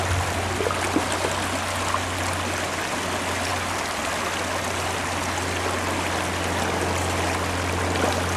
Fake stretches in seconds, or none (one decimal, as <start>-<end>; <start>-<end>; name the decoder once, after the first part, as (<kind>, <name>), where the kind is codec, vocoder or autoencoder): none

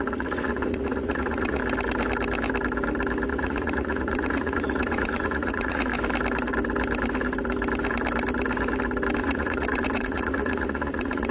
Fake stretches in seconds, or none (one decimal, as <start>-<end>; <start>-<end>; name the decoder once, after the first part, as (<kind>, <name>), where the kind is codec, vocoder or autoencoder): 0.0-1.6 (vocoder, Vocos); 3.3-5.9; 9.2-11.3